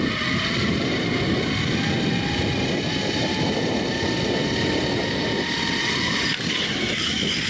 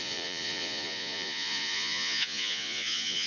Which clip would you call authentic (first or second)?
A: first